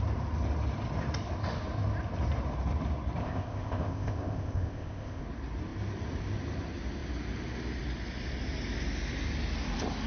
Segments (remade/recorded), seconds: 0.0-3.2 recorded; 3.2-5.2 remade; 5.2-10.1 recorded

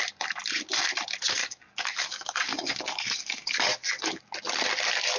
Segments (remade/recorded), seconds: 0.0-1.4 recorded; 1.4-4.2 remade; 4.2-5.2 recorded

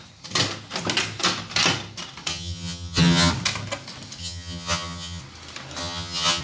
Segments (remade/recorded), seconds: 0.0-2.3 recorded; 2.3-3.3 remade; 3.3-4.2 recorded; 4.2-5.2 remade; 5.2-5.8 recorded; 5.8-6.4 remade

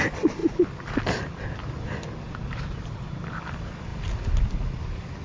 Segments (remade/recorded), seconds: 0.0-5.2 recorded

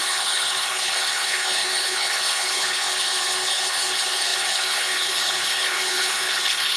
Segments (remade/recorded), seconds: 0.0-6.8 remade

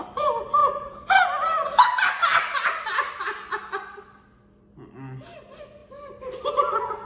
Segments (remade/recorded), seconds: 0.0-7.1 recorded